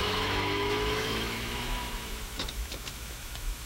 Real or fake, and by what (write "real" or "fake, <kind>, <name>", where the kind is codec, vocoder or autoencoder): fake, autoencoder, DAC-VAE